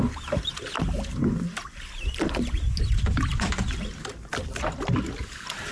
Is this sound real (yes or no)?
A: yes